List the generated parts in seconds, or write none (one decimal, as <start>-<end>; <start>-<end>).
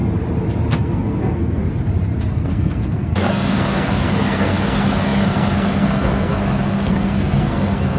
0.7-1.6; 2.3-8.0